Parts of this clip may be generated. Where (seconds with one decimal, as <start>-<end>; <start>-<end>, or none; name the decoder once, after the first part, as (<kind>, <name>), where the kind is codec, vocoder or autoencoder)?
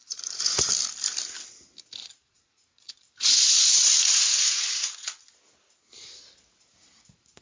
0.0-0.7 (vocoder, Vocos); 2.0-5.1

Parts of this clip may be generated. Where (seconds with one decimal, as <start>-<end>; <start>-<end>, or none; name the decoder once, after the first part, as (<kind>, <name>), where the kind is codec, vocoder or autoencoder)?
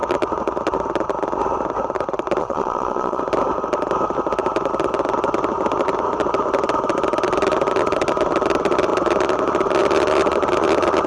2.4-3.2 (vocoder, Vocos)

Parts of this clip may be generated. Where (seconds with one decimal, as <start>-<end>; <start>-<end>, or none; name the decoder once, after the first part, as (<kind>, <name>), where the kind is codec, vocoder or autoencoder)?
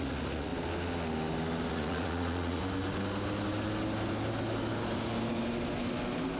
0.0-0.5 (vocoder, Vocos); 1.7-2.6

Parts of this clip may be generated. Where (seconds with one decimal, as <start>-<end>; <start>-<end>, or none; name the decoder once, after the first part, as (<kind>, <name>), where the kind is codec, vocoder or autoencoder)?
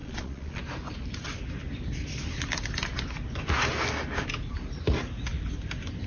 0.0-0.6 (vocoder, Vocos)